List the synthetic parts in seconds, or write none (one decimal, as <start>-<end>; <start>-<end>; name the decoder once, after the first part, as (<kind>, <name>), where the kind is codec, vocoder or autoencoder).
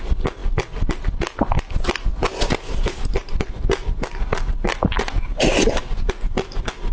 2.1-3.7 (vocoder, BigVGAN v2)